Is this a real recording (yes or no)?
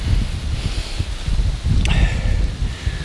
yes